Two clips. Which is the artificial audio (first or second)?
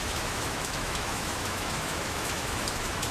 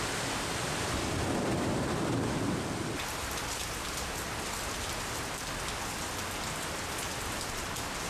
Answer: first